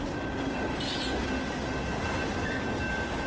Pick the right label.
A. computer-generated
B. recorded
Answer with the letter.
B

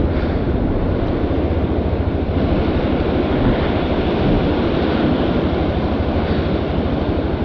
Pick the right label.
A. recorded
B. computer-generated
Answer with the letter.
A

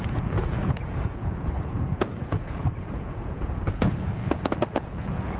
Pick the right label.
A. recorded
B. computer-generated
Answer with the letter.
B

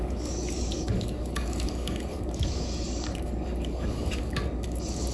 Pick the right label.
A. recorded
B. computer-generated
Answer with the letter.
B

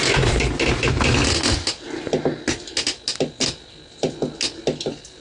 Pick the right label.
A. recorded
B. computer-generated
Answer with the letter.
A